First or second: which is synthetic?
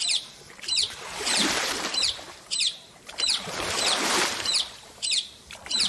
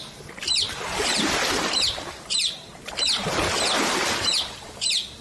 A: first